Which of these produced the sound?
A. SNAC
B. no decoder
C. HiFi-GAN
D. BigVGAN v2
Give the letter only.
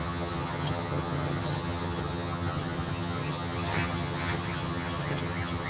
C